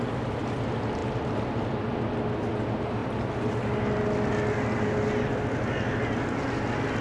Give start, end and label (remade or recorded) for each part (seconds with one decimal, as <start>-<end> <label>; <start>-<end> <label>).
0.0-7.0 recorded